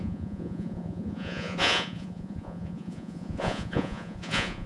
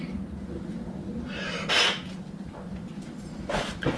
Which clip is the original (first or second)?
second